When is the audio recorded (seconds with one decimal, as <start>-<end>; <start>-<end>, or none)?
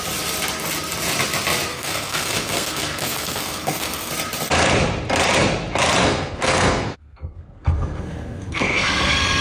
0.0-1.7; 4.1-6.0